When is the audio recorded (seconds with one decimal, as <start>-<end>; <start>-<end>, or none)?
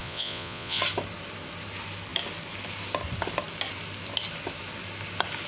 0.8-5.5